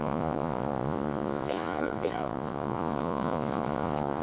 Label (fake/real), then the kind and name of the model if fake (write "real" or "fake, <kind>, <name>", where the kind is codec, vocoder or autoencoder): fake, vocoder, Vocos